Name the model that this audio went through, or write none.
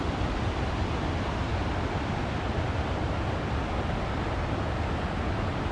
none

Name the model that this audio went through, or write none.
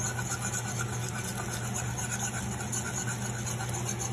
none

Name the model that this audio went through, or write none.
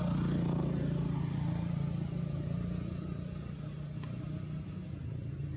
none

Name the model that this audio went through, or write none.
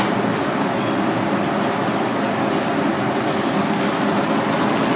none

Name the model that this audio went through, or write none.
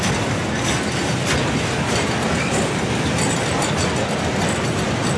none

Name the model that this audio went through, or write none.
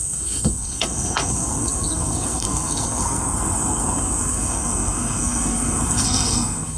codec, SNAC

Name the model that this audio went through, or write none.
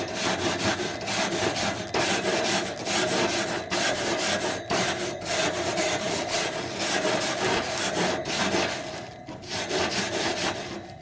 none